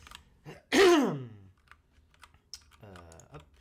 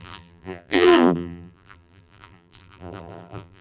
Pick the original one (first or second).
first